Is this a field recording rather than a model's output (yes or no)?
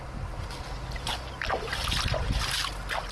yes